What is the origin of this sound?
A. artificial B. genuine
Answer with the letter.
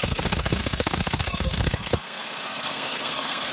A